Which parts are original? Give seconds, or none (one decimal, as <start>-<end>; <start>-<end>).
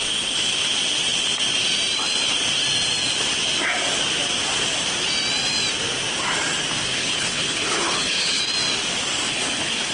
0.0-6.9; 8.4-9.3